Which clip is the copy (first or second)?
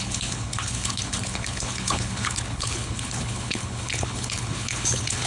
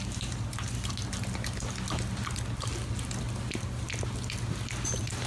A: first